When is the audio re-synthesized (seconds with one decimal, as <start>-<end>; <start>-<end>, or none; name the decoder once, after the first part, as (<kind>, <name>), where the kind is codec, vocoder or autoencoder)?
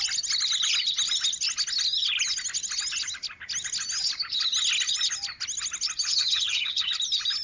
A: 6.1-6.9 (vocoder, HiFi-GAN)